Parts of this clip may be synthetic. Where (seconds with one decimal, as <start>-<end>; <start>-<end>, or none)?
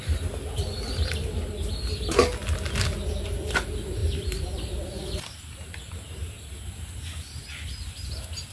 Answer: 4.0-6.7; 7.4-8.0